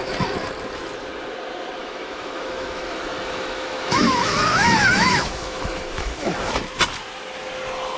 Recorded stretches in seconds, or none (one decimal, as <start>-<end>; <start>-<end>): 0.0-1.8; 6.5-8.0